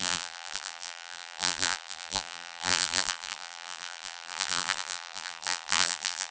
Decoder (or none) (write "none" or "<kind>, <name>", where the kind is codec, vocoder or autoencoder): vocoder, BigVGAN v2